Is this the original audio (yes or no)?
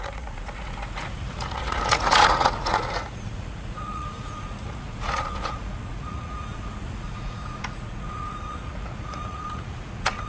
no